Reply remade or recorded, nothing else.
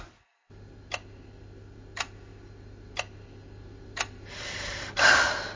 recorded